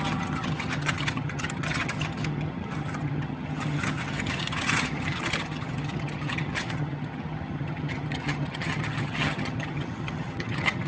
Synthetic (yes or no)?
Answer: yes